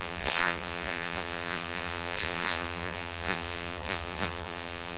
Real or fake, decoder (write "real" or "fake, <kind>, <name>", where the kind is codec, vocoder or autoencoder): fake, vocoder, BigVGAN v2